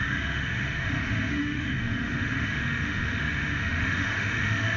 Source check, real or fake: fake